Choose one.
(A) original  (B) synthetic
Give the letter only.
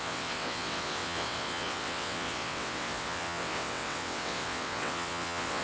B